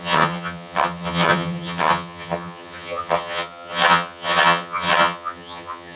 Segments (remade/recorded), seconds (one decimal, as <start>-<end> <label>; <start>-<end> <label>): 0.0-6.0 remade